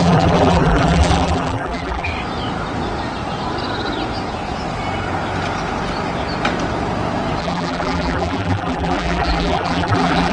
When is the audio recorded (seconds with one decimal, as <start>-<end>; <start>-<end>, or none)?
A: 2.1-7.4